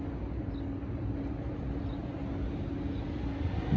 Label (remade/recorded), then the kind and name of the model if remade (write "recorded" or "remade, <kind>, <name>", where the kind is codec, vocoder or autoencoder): recorded